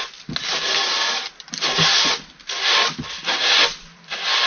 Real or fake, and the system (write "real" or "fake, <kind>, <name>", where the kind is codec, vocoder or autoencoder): real